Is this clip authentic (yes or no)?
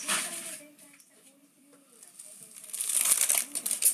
yes